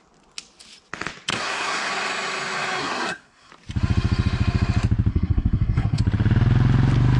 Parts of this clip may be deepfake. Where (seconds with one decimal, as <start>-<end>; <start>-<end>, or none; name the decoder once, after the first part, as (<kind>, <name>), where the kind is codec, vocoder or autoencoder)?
1.3-1.9 (codec, SNAC); 2.8-3.5; 5.1-6.0